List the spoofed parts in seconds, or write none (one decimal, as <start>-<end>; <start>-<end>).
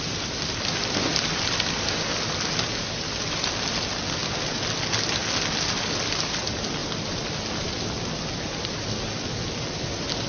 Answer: none